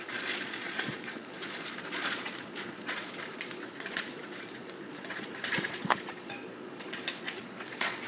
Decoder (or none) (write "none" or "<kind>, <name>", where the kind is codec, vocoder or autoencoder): vocoder, Vocos